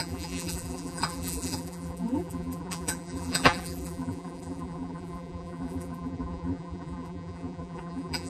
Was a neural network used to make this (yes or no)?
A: yes